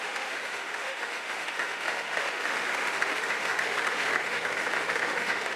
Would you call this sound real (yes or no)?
no